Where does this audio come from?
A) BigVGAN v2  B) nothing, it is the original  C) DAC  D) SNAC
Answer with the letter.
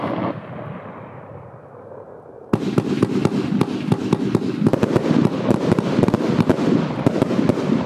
B